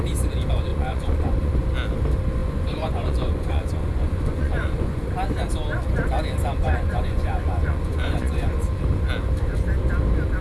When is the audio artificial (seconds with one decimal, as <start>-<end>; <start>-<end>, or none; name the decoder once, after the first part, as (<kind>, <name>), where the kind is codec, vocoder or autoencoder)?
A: 0.7-1.5 (vocoder, Vocos); 2.4-5.0; 6.6-8.5